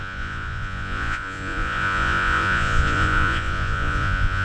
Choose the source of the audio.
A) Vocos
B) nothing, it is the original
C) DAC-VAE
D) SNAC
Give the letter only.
A